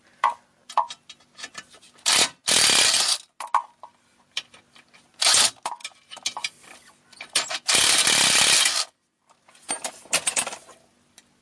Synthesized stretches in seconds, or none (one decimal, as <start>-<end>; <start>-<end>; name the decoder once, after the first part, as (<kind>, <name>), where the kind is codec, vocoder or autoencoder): none